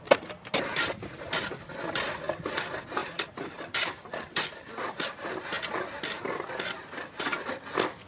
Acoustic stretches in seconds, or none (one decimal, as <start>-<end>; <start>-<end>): 0.0-3.0; 4.9-8.1